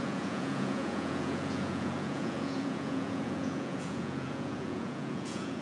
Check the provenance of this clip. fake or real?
fake